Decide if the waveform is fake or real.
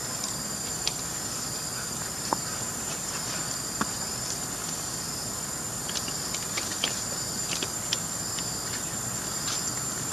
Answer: real